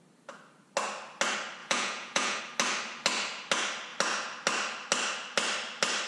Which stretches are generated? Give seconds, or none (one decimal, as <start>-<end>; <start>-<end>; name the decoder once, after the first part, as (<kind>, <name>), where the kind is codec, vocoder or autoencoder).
1.6-2.4 (vocoder, Vocos)